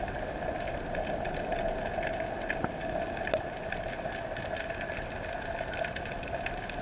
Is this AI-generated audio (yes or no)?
no